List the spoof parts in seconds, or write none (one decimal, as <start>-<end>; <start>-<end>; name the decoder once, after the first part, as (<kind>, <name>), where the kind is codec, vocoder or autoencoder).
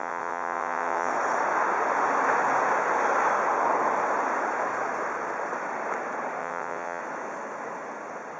0.0-1.1 (vocoder, WaveNeXt); 6.4-7.0